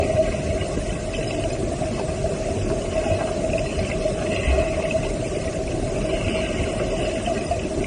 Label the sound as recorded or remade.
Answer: recorded